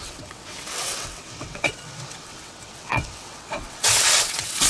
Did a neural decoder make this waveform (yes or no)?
yes